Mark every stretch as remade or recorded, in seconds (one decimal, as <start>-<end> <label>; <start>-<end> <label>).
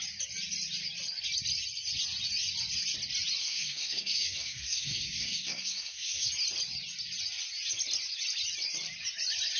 0.0-3.4 recorded; 3.4-6.3 remade; 6.3-9.6 recorded